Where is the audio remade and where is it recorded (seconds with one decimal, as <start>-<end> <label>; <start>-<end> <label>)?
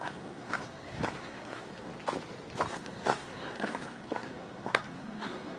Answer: 0.0-1.9 remade; 1.9-2.7 recorded; 2.7-5.6 remade